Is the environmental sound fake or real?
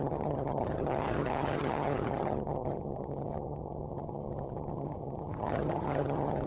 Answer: fake